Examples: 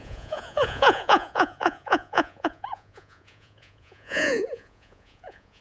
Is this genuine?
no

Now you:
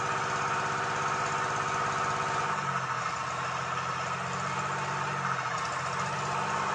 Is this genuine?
yes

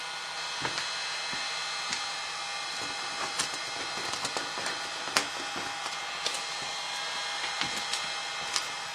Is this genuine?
yes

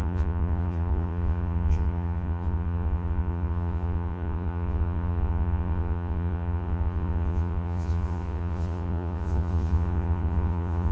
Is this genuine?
no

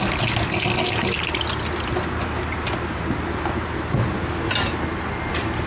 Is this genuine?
yes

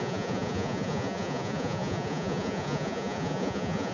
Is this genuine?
no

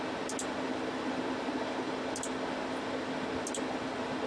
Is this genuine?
yes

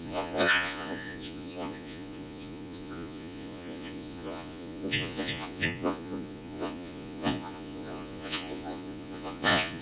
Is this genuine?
no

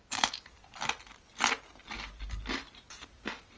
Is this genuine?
yes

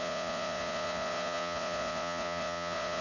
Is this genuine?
no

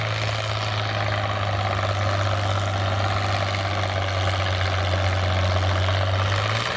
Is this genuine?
yes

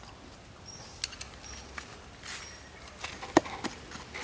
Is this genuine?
yes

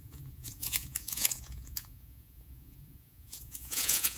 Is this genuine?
no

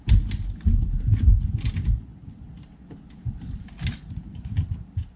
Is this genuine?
yes